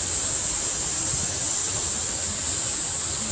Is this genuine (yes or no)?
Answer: yes